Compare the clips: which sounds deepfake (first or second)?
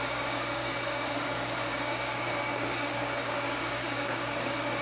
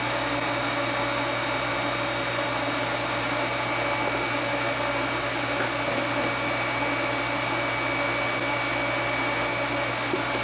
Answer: first